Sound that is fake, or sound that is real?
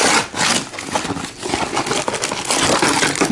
real